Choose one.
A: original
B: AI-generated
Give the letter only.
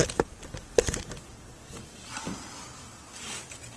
B